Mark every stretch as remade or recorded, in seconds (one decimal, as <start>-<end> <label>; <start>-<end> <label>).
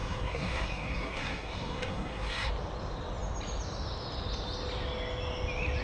0.0-2.5 remade; 2.5-5.8 recorded